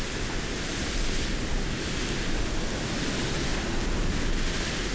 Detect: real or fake real